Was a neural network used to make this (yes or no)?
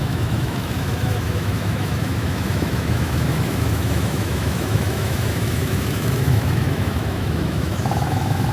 yes